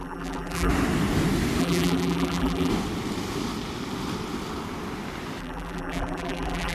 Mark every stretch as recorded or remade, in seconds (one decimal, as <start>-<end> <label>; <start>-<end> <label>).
0.0-0.7 remade; 0.7-1.6 recorded; 1.6-2.7 remade; 2.7-5.4 recorded; 5.4-6.7 remade